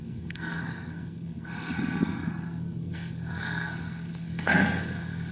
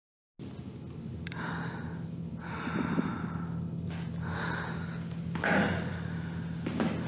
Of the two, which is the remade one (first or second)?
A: first